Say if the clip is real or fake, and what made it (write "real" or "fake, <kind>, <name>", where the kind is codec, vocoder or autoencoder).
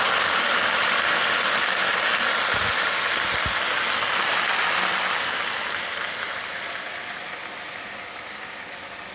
real